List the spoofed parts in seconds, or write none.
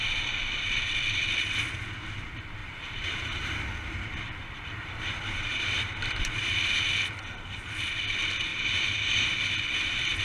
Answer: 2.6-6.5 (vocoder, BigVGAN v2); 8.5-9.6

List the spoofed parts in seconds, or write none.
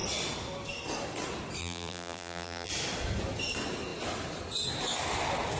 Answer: 1.6-2.7 (vocoder, BigVGAN v2)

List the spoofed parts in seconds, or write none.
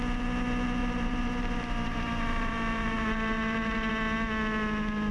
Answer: 0.8-3.9 (vocoder, BigVGAN v2)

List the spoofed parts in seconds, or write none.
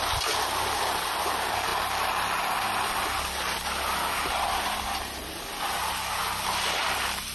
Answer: none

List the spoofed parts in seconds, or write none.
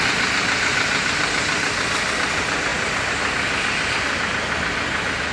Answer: none